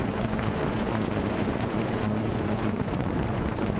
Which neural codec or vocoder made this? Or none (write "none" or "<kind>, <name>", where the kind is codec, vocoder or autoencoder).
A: vocoder, Vocos